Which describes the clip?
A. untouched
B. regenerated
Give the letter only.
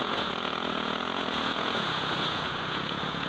B